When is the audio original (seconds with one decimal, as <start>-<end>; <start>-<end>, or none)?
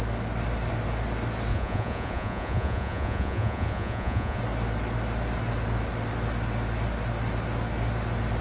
0.0-1.5; 4.4-8.4